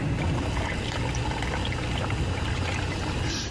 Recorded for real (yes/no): no